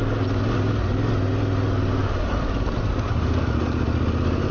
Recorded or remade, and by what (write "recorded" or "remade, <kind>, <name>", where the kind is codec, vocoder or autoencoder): recorded